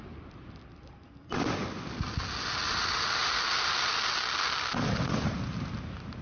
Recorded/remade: recorded